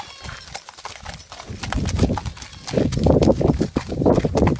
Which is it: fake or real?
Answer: real